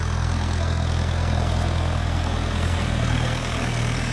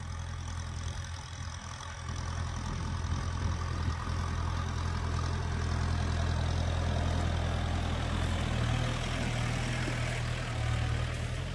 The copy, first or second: first